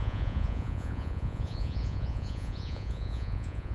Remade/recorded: remade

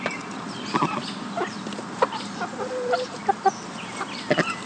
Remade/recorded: recorded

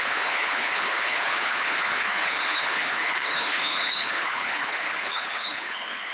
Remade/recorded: remade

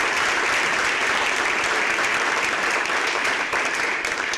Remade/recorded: remade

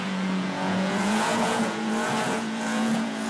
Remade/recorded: remade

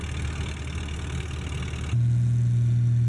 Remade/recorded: recorded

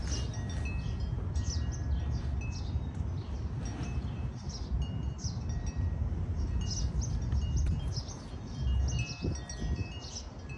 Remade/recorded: recorded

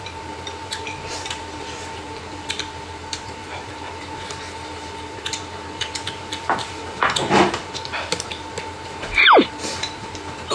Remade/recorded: remade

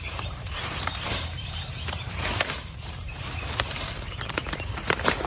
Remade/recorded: remade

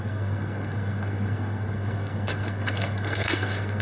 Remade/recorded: remade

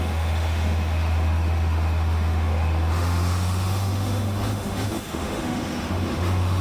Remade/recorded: remade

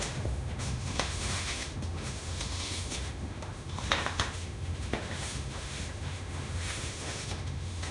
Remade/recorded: remade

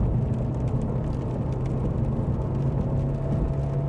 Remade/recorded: recorded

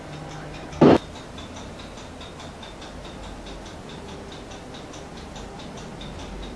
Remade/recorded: recorded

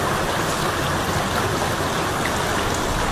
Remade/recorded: recorded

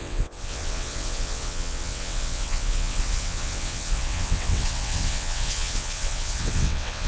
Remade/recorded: remade